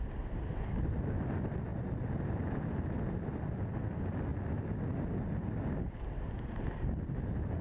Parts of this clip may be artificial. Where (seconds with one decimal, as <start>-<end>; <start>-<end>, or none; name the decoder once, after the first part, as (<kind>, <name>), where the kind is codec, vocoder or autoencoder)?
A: none